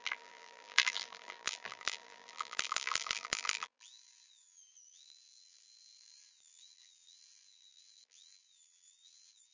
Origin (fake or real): fake